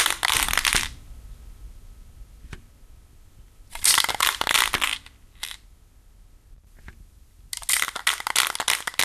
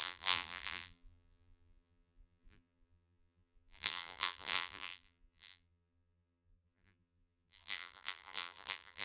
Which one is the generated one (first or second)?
second